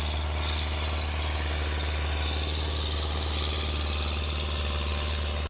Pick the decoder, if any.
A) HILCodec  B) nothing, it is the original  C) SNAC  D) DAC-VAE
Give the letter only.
B